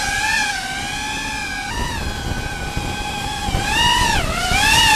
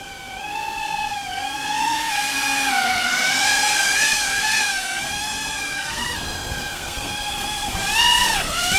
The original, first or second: first